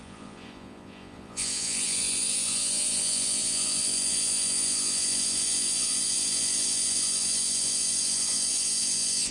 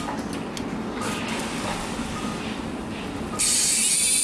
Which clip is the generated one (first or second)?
first